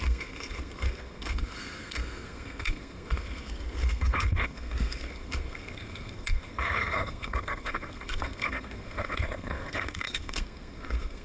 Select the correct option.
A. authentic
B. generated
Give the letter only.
B